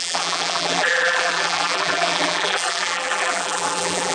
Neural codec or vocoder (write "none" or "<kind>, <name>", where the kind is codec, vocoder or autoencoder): vocoder, BigVGAN v2